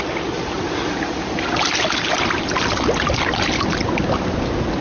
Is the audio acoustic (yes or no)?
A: yes